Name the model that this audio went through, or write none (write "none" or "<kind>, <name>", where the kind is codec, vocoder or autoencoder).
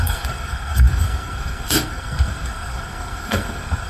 codec, SNAC